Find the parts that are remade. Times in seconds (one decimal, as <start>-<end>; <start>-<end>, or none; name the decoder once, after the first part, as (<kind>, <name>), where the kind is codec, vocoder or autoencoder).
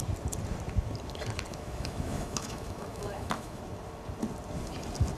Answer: 1.5-3.6 (autoencoder, DAC-VAE)